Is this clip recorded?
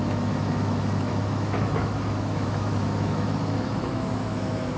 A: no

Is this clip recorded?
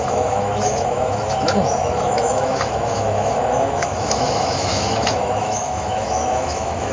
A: no